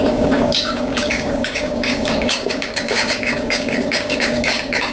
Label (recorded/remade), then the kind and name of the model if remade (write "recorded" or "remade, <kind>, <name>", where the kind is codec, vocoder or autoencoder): remade, codec, DAC